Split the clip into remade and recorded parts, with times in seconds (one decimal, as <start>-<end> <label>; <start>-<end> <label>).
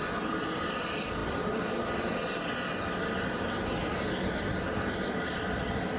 0.0-6.0 recorded